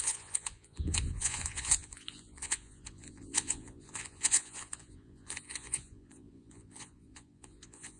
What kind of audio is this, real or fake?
fake